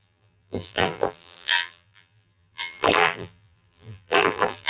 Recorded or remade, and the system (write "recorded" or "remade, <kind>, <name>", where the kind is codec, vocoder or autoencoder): remade, vocoder, BigVGAN v2